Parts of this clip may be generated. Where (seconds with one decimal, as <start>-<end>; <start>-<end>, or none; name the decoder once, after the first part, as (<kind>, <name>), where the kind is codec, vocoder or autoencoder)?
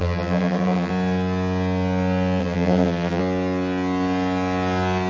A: 0.0-0.9 (vocoder, BigVGAN v2); 2.4-3.2